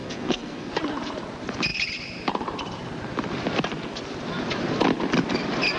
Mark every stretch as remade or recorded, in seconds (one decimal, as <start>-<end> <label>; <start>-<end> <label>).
0.0-0.7 remade; 0.7-5.8 recorded